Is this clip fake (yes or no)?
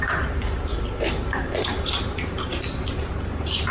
yes